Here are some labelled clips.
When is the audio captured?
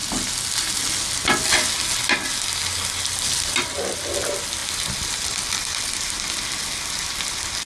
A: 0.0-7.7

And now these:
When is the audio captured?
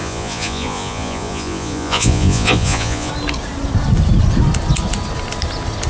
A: 3.1-5.9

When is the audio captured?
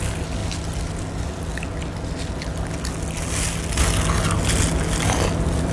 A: 0.0-5.7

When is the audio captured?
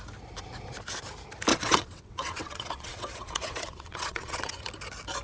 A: 0.0-1.5; 4.6-5.2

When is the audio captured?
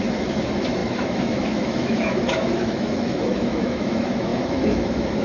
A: none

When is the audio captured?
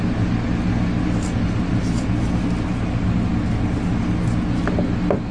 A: 0.0-5.3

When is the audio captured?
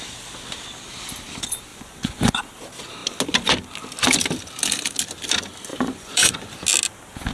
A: 0.0-1.7; 2.4-5.7; 6.5-7.3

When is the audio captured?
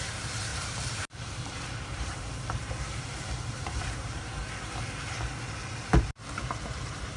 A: 4.4-5.8